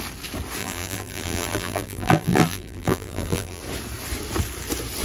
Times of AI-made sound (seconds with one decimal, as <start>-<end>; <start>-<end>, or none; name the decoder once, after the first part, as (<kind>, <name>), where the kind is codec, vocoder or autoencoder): 0.6-3.6 (vocoder, BigVGAN v2)